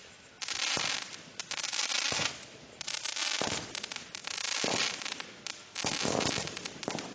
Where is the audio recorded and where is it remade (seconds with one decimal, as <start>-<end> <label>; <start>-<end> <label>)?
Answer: 0.0-2.2 recorded; 2.2-2.7 remade; 2.7-7.1 recorded